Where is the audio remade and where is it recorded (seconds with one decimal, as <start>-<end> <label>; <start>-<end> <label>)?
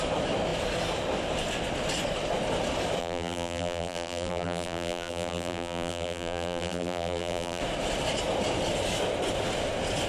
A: 0.0-3.0 recorded; 3.0-7.6 remade; 7.6-10.1 recorded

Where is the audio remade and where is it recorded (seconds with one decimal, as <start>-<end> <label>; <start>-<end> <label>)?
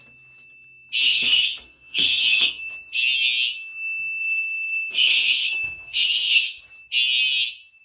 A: 0.0-1.0 recorded; 1.0-2.7 remade; 2.7-4.2 recorded; 4.2-6.6 remade; 6.6-7.8 recorded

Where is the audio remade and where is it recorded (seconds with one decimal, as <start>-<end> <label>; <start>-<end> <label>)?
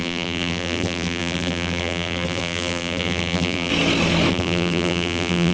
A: 0.0-3.7 remade; 3.7-4.3 recorded; 4.3-5.5 remade